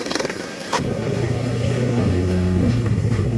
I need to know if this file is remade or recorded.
remade